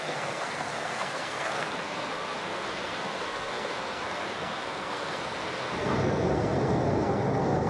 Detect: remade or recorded remade